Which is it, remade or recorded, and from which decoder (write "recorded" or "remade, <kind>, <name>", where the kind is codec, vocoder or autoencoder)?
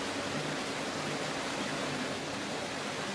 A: recorded